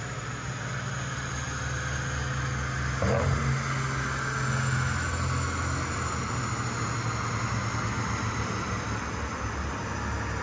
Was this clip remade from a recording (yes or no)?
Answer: no